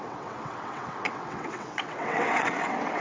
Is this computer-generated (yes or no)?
yes